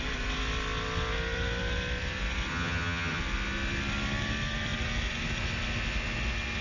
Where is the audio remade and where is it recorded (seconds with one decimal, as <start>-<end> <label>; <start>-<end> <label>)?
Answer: 0.0-2.5 recorded; 2.5-3.2 remade; 3.2-6.6 recorded